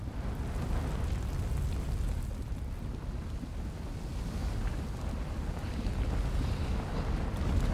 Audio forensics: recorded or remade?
recorded